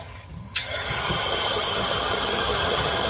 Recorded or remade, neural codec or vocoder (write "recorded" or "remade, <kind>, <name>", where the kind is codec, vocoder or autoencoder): remade, vocoder, HiFi-GAN